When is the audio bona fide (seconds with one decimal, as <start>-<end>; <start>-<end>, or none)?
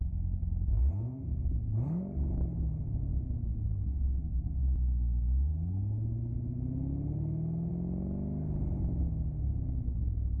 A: 0.0-0.7; 1.5-10.4